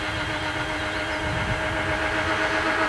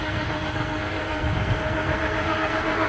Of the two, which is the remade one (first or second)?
second